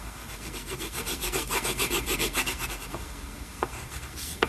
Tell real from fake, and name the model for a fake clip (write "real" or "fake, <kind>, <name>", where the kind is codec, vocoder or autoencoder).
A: fake, codec, SNAC